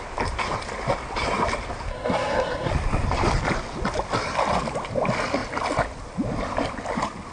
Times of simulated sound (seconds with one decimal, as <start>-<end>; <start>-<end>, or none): 1.9-2.7